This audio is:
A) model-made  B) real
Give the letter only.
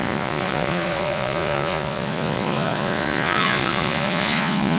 A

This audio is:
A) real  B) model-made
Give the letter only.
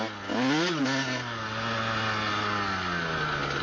A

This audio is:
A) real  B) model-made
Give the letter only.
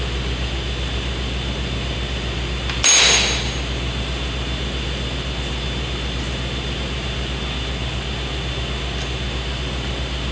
A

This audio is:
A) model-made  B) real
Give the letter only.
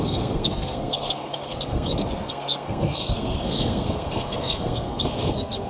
A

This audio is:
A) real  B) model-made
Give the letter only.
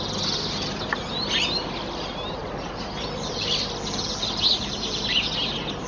A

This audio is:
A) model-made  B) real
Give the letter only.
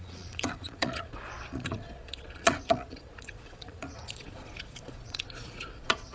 A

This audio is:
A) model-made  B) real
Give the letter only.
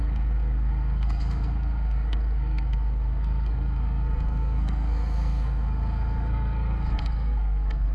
A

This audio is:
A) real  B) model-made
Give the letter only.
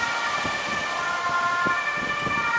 A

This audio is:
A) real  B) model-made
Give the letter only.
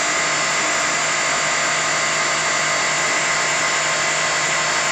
A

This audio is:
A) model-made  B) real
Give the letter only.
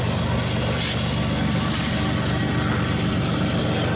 B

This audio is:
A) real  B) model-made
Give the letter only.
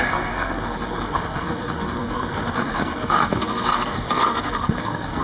B